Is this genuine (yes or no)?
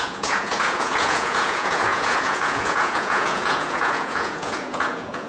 no